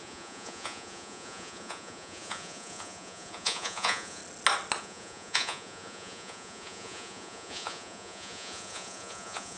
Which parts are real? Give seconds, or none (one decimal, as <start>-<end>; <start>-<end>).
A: 4.2-4.8